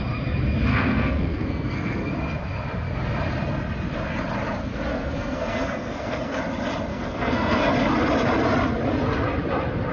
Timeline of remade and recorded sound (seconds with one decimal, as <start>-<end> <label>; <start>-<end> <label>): 0.0-0.7 recorded; 0.7-2.1 remade; 2.1-4.9 recorded; 4.9-6.4 remade; 6.4-6.9 recorded; 6.9-7.7 remade; 7.7-9.9 recorded

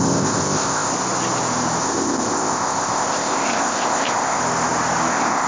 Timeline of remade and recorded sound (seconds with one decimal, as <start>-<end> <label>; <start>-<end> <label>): 0.0-0.9 remade; 0.9-1.8 recorded; 1.8-4.4 remade; 4.4-5.1 recorded; 5.1-5.5 remade